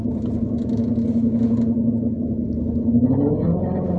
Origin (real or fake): real